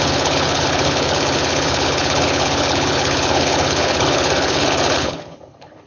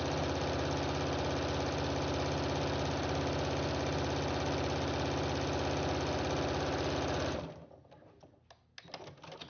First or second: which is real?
second